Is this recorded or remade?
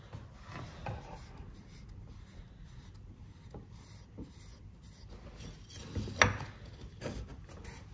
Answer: recorded